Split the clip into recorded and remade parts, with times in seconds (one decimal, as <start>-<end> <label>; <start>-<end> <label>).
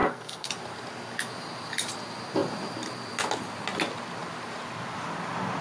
0.0-0.5 remade; 0.5-5.6 recorded